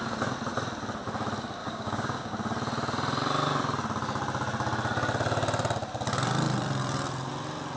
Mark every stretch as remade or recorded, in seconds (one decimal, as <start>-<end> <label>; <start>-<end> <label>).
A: 0.0-1.6 recorded; 1.6-2.3 remade; 2.3-7.8 recorded